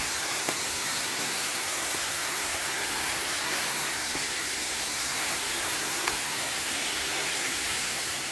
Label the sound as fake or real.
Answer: fake